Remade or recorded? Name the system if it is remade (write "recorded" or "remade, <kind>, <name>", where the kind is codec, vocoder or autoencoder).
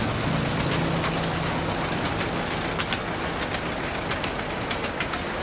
recorded